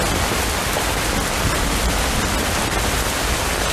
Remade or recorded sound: recorded